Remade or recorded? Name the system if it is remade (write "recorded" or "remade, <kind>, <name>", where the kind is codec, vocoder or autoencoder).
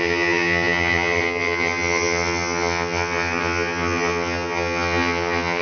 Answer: remade, vocoder, HiFi-GAN